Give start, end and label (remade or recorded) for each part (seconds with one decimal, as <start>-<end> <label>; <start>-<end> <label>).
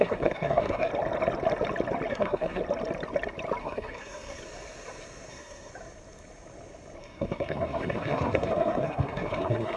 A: 0.0-0.9 remade; 0.9-2.1 recorded; 2.1-2.6 remade; 2.6-3.6 recorded; 3.6-4.4 remade; 4.4-5.3 recorded; 5.3-5.7 remade; 5.7-7.0 recorded; 7.0-9.8 remade